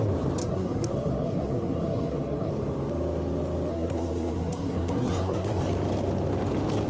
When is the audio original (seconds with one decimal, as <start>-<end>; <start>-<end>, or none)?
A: 0.0-0.4; 2.5-3.7; 5.6-6.9